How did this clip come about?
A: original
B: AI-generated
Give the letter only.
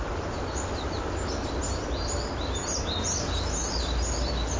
A